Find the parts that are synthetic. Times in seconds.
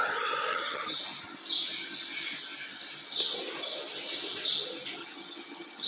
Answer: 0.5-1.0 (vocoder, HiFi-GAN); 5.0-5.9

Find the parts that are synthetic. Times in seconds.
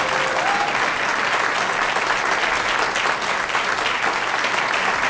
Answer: none